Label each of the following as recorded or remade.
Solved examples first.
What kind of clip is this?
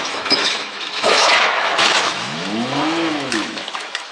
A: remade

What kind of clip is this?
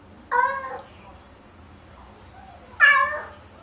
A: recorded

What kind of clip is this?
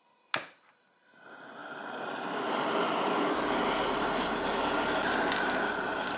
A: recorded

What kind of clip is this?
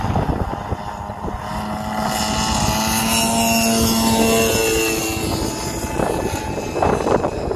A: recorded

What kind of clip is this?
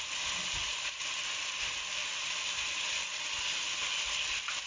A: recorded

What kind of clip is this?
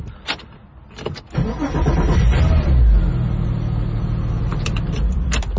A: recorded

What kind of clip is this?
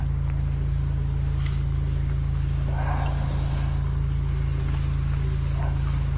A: recorded